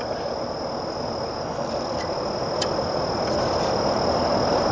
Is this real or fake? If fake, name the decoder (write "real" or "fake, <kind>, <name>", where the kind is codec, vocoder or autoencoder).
real